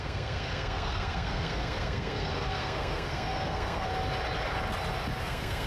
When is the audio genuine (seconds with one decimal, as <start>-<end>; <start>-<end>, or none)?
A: 3.9-5.2

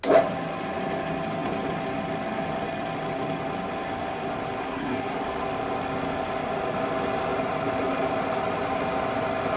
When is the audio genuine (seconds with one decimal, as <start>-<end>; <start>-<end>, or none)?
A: 0.0-4.6; 5.2-9.6